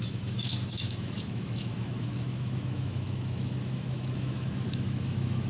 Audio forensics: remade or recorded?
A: remade